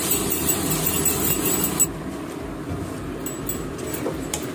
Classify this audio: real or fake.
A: real